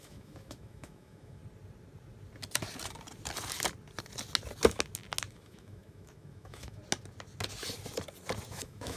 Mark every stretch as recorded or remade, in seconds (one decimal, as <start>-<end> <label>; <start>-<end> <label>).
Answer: 0.0-1.4 remade; 1.4-5.3 recorded; 5.3-6.8 remade; 6.8-8.5 recorded; 8.5-9.0 remade

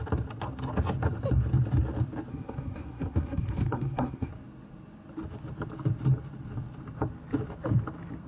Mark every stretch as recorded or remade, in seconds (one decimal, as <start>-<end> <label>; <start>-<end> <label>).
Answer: 0.0-2.3 recorded; 2.3-4.3 remade; 4.3-8.3 recorded